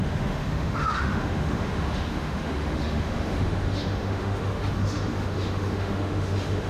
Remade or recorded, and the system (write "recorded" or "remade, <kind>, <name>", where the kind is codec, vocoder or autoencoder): remade, autoencoder, DAC-VAE